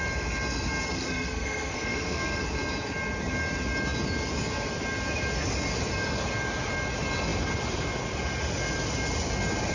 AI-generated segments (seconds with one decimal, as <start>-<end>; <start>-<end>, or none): 0.9-2.4